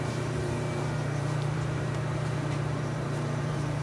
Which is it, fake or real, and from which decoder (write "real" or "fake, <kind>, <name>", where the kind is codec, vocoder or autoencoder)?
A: fake, vocoder, BigVGAN v2